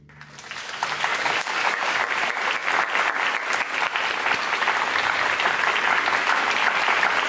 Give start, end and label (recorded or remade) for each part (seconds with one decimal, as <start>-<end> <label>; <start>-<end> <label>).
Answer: 0.0-1.1 recorded; 1.1-2.1 remade; 2.1-7.3 recorded